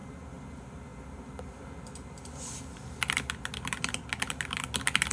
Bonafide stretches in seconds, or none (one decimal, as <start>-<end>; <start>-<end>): 0.0-5.1